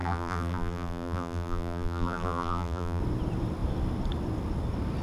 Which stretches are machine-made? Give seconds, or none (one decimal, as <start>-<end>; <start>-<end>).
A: 0.0-3.0